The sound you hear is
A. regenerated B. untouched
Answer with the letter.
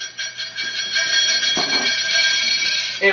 A